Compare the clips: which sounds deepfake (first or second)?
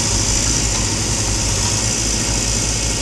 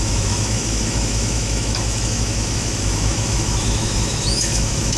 second